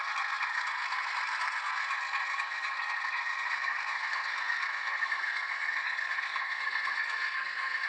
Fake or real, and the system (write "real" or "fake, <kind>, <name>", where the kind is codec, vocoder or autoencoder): fake, codec, SNAC